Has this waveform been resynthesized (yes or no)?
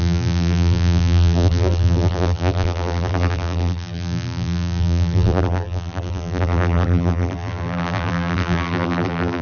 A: yes